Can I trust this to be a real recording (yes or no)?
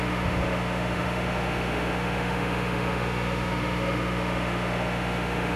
no